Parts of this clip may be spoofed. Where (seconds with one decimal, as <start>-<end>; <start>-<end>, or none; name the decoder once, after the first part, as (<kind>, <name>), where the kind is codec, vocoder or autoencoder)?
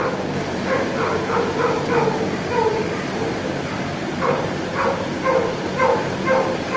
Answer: 0.0-1.1 (vocoder, BigVGAN v2); 2.5-6.8